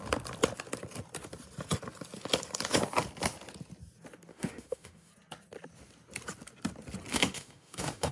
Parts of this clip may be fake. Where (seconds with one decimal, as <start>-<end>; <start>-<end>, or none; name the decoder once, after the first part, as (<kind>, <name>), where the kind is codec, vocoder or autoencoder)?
4.3-5.1 (autoencoder, DAC-VAE); 7.1-8.1